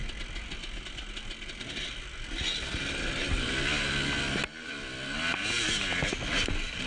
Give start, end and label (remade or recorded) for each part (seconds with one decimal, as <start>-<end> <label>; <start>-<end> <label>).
0.0-6.9 recorded